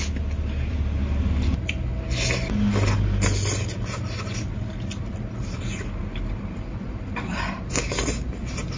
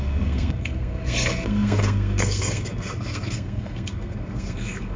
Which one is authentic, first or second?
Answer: first